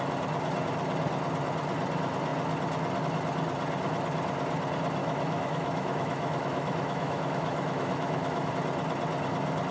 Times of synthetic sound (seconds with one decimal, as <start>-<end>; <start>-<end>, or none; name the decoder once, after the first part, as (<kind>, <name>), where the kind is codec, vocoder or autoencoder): 5.0-8.5 (autoencoder, DAC-VAE)

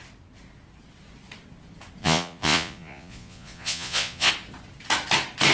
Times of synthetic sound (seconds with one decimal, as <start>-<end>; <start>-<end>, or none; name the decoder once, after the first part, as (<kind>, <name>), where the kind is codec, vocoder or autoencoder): 2.0-4.3 (vocoder, Vocos)

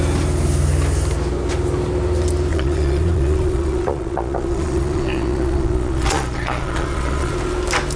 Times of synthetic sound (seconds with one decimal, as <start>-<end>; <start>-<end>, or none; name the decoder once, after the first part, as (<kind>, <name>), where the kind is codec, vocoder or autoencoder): 2.5-7.3 (vocoder, Vocos)

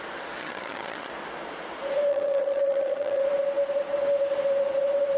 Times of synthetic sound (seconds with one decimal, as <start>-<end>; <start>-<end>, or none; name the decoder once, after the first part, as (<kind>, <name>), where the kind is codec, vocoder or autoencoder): 0.4-1.1 (vocoder, HiFi-GAN); 2.1-3.2

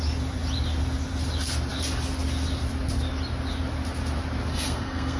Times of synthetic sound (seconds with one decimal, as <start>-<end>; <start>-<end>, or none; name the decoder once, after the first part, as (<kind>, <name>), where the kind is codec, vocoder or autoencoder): 4.5-5.2 (codec, SNAC)

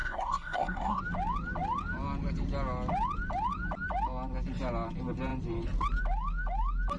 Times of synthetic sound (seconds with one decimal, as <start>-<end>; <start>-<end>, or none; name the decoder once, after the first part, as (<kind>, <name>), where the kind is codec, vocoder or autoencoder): 0.0-1.0 (codec, SNAC)

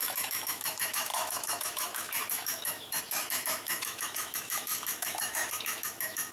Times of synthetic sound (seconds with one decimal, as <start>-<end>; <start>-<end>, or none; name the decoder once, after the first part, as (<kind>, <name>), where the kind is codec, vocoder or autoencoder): 0.0-6.3 (autoencoder, DAC-VAE)